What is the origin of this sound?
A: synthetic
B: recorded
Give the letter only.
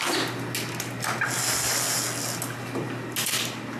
B